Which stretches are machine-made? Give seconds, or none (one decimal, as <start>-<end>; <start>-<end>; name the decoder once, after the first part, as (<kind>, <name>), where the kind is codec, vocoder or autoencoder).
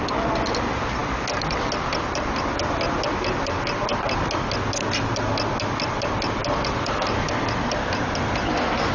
none